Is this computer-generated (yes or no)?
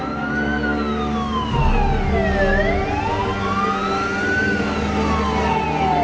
no